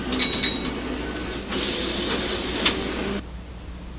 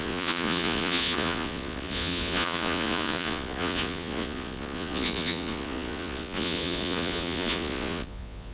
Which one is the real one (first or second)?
first